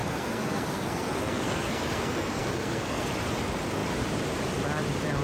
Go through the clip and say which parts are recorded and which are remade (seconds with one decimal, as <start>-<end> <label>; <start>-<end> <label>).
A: 0.0-3.1 remade; 3.1-5.2 recorded

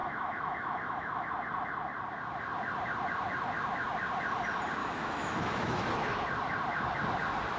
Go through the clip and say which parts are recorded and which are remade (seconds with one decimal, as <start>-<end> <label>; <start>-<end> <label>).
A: 0.0-1.3 remade; 1.3-4.8 recorded; 4.8-5.8 remade; 5.8-7.6 recorded

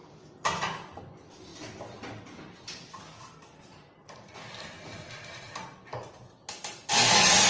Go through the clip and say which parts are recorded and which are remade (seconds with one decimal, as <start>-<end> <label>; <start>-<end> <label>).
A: 0.0-1.0 remade; 1.0-7.5 recorded

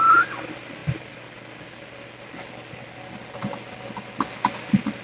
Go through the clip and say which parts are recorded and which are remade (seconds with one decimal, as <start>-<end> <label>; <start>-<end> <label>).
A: 0.0-5.0 recorded

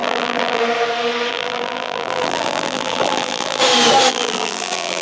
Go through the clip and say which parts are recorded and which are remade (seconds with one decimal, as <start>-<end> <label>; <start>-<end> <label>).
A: 0.0-0.6 remade; 0.6-1.3 recorded; 1.3-3.6 remade; 3.6-4.1 recorded; 4.1-5.0 remade